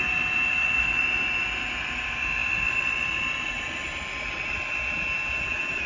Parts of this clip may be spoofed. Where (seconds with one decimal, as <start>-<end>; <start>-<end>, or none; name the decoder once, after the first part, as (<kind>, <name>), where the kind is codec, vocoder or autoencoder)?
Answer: none